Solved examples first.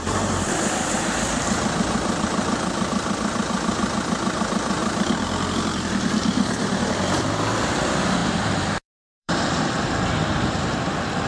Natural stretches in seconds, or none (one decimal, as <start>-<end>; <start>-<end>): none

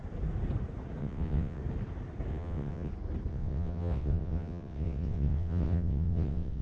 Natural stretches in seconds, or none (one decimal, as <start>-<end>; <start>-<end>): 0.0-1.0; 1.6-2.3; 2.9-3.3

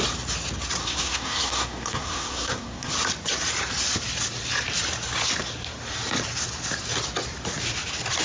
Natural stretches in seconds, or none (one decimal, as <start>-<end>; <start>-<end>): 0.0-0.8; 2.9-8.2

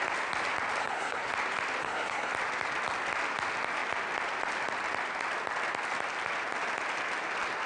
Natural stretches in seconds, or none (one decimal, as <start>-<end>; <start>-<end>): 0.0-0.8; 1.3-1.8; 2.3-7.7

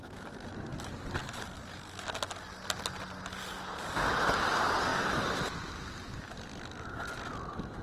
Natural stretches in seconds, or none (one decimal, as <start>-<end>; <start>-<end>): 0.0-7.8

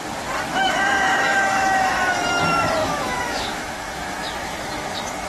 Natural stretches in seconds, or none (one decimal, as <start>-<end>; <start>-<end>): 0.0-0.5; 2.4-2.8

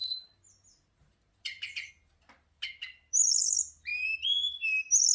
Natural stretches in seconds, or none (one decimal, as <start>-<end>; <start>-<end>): 0.0-5.1

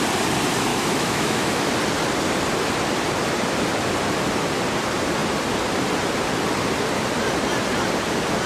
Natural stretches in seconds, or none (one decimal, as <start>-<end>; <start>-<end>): 0.0-0.7; 1.7-8.5